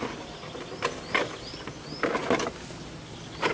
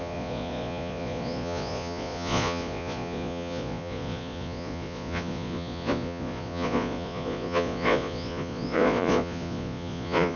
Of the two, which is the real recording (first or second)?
first